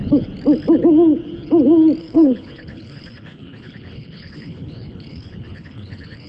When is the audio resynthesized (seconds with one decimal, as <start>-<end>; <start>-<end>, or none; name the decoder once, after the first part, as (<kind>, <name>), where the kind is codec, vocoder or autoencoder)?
2.0-6.3 (codec, HILCodec)